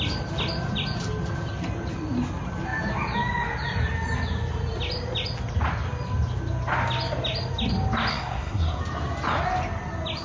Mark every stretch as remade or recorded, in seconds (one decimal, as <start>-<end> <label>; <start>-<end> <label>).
0.0-8.1 recorded; 8.1-8.8 remade; 8.8-10.2 recorded